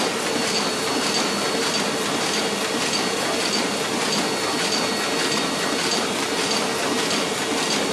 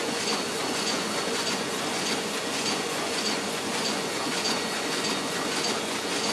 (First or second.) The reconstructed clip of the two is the second